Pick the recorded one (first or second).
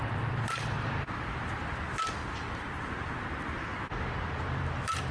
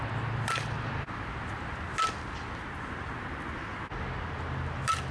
second